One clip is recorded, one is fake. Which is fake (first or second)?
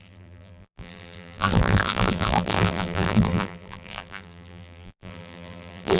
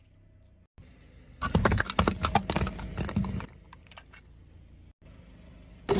first